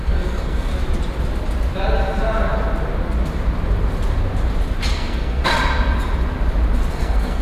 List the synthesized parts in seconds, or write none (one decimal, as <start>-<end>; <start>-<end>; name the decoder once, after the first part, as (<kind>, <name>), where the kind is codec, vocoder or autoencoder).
0.0-0.7 (codec, SNAC); 4.9-5.5; 6.9-7.4